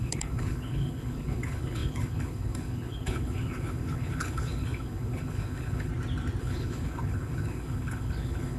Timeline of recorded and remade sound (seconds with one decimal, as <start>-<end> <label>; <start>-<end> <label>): 0.0-5.9 remade; 5.9-6.4 recorded; 6.4-8.6 remade